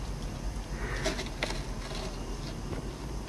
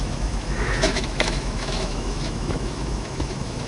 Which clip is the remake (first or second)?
second